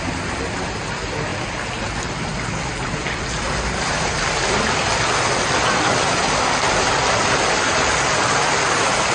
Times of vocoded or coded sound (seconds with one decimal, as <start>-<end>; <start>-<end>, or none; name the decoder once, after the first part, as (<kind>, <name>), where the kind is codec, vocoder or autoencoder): none